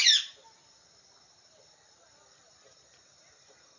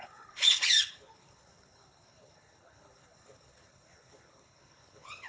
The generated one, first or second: second